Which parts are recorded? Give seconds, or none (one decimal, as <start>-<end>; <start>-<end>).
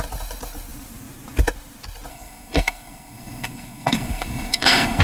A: 0.0-2.1